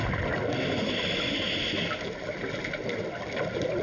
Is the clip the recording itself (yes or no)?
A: yes